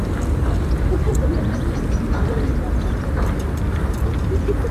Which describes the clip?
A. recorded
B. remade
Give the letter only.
A